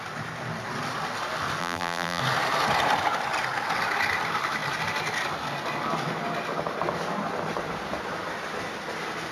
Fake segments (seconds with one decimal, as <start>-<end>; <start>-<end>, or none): 1.6-2.2